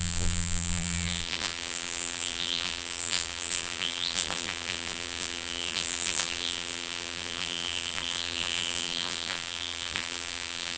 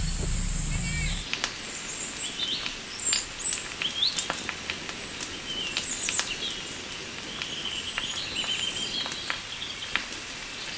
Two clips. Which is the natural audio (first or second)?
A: second